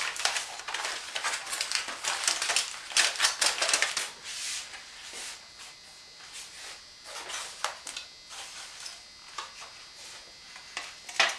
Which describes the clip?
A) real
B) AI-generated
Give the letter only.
A